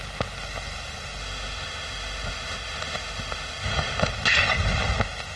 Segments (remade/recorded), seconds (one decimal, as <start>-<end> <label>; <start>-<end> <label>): 0.0-1.2 recorded; 1.2-4.1 remade; 4.1-5.4 recorded